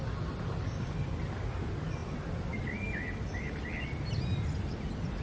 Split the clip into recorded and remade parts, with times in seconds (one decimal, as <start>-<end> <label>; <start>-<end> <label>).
0.0-5.2 recorded